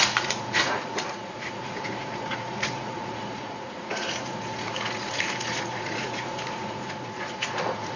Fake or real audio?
fake